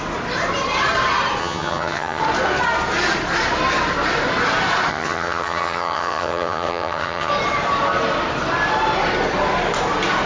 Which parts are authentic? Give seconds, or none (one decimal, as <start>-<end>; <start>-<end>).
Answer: 0.0-1.4; 2.2-4.9; 7.3-10.3